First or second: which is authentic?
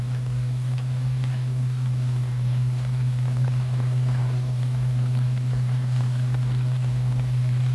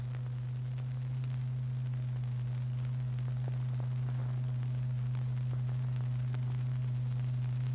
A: second